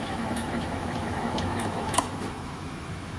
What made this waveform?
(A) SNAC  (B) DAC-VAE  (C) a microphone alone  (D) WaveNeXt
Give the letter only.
B